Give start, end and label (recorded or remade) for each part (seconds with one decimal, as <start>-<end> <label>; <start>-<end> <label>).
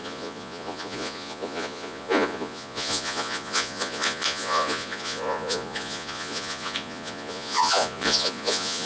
0.0-8.9 remade